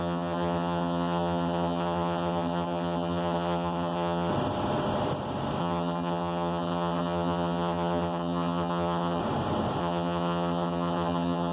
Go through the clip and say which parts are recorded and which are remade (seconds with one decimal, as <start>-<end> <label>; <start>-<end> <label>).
0.0-4.3 remade; 4.3-5.6 recorded; 5.6-9.2 remade; 9.2-9.8 recorded; 9.8-11.5 remade